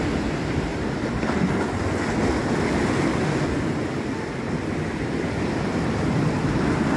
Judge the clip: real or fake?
real